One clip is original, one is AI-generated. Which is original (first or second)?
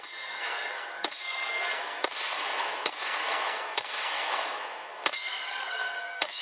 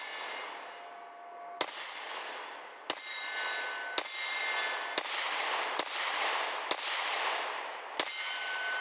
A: second